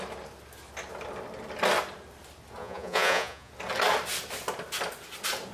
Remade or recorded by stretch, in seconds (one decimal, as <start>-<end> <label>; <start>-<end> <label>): 0.0-2.6 recorded; 2.6-3.5 remade; 3.5-5.5 recorded